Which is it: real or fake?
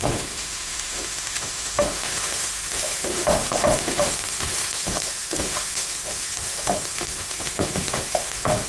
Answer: fake